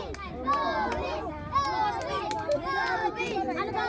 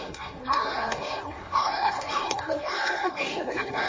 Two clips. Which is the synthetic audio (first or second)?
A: second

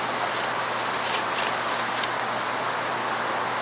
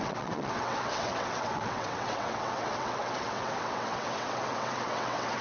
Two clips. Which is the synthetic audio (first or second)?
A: second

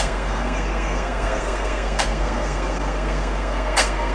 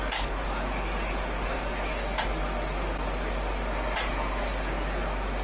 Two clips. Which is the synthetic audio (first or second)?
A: first